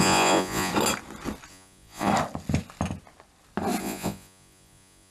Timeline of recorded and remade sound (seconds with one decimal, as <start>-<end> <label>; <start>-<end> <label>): 0.0-0.7 remade; 0.7-1.5 recorded; 1.5-2.1 remade; 2.1-3.8 recorded; 3.8-5.1 remade